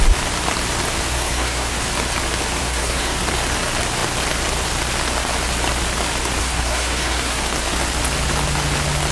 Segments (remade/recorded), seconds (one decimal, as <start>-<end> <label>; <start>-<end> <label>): 0.0-1.1 recorded; 1.1-1.8 remade; 1.8-2.6 recorded; 2.6-3.2 remade; 3.2-6.4 recorded; 6.4-7.4 remade; 7.4-9.1 recorded

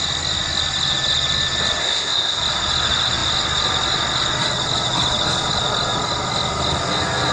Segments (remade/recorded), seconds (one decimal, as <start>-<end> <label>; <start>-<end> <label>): 0.0-1.8 recorded; 1.8-2.4 remade; 2.4-7.3 recorded

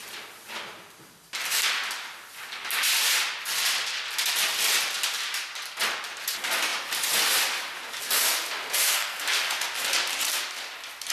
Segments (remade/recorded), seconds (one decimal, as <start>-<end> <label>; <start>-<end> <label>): 0.0-8.8 recorded; 8.8-9.4 remade; 9.4-11.1 recorded